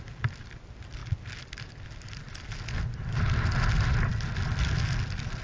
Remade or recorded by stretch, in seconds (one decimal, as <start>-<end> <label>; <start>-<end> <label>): 0.0-5.4 recorded